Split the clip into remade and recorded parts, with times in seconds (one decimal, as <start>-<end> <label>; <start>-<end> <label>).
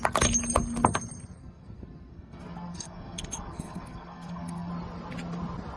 0.0-1.4 recorded; 1.4-4.7 remade; 4.7-5.8 recorded